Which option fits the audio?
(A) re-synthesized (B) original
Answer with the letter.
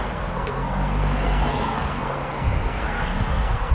A